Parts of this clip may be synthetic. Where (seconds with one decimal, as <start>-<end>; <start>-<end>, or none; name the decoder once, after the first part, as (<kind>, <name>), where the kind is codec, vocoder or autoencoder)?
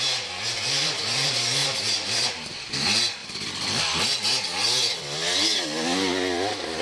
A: 1.6-2.3 (vocoder, BigVGAN v2); 3.2-4.1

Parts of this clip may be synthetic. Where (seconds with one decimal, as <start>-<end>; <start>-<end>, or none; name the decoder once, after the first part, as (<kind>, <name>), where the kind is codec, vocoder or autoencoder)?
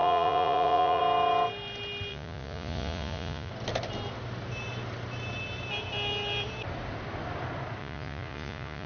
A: 0.0-1.0 (vocoder, Vocos); 2.1-3.5; 7.8-8.9